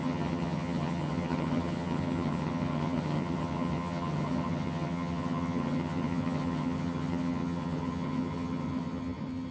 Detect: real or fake fake